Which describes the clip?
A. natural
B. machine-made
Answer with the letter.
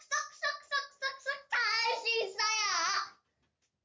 A